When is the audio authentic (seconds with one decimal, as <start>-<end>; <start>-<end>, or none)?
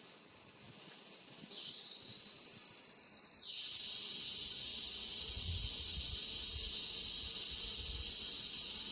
0.0-4.7; 6.2-8.9